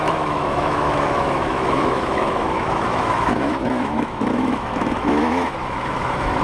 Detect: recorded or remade remade